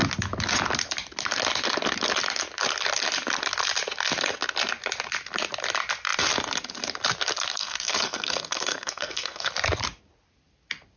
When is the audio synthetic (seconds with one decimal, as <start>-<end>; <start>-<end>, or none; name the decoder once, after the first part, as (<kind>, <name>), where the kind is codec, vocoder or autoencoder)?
7.5-9.5 (codec, SNAC)